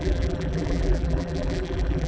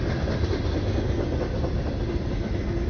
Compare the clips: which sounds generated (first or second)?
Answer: first